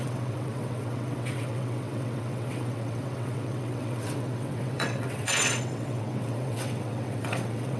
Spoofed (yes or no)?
yes